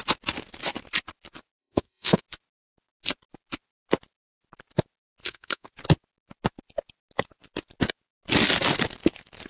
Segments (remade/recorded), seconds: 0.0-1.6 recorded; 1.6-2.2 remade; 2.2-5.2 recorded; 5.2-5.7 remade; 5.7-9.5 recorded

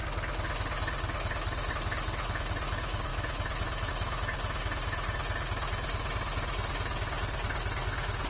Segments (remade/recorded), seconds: 0.0-8.3 recorded

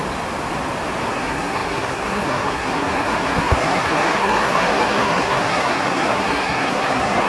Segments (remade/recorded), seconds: 0.0-1.1 recorded; 1.1-7.3 remade

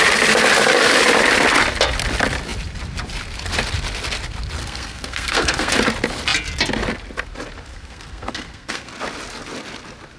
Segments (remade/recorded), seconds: 0.0-4.6 recorded; 4.6-5.7 remade; 5.7-7.7 recorded; 7.7-8.9 remade; 8.9-10.2 recorded

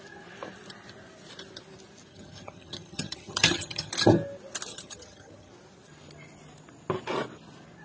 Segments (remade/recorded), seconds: 0.0-2.1 recorded; 2.1-3.9 remade; 3.9-4.7 recorded; 4.7-5.5 remade; 5.5-7.8 recorded

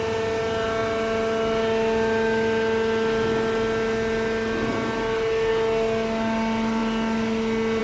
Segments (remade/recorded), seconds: 0.0-7.8 recorded

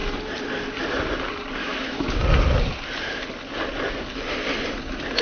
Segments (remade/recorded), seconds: 0.0-1.6 recorded; 1.6-2.2 remade; 2.2-5.2 recorded